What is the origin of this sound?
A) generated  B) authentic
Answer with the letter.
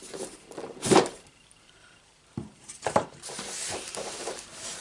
A